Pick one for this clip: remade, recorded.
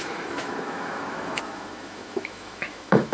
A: remade